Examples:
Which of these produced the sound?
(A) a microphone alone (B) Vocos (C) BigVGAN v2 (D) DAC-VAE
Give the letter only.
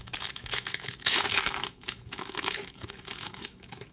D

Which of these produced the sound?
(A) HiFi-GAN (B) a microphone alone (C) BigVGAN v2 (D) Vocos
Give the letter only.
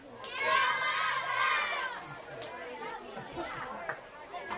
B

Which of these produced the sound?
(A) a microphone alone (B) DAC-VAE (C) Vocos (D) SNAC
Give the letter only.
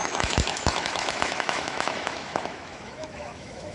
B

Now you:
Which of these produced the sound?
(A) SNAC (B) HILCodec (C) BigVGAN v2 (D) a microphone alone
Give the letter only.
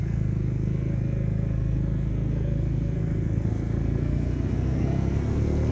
A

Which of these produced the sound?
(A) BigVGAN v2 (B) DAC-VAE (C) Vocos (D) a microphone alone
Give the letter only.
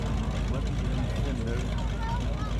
D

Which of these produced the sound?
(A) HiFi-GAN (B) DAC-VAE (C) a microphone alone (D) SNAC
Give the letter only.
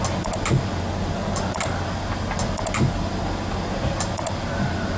C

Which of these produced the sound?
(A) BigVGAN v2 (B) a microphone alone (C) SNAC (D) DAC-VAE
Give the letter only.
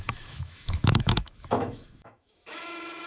D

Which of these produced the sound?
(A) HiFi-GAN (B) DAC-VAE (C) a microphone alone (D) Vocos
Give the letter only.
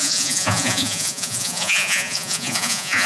D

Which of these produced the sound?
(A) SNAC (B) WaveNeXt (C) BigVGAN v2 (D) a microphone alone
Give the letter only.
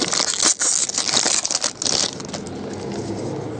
D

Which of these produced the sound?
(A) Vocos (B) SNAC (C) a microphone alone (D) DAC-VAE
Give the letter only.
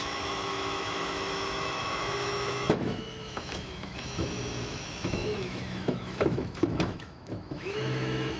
D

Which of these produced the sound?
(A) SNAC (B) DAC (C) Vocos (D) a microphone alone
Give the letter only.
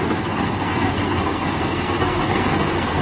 A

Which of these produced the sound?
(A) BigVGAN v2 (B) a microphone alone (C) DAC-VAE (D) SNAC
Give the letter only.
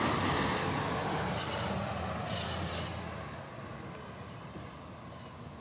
B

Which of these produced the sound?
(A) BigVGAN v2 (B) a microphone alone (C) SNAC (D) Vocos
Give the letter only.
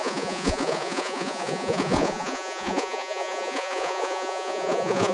D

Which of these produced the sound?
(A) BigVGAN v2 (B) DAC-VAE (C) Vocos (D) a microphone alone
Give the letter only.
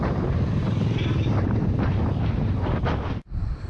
A